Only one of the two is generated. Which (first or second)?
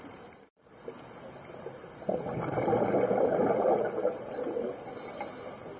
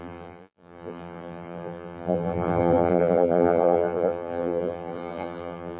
second